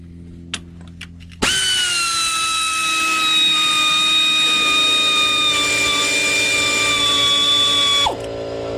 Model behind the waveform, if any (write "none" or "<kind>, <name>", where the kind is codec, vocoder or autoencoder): none